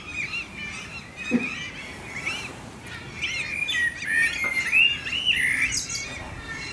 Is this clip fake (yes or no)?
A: no